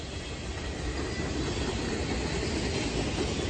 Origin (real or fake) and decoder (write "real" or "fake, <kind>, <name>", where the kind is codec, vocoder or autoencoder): real